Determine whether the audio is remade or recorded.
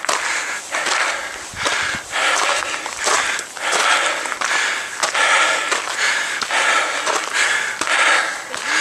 recorded